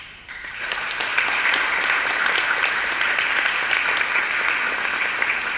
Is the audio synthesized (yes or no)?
no